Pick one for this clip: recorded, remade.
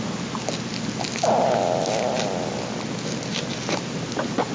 recorded